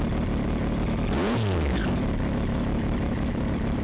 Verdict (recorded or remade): recorded